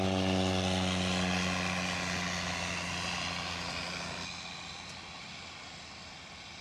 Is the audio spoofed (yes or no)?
no